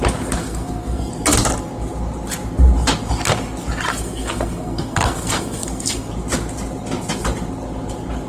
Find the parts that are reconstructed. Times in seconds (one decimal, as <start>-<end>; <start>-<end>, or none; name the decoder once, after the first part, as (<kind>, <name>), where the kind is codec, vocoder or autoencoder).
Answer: 0.4-1.1 (codec, SNAC); 3.9-6.1